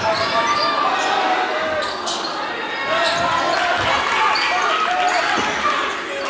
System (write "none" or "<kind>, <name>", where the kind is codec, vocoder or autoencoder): none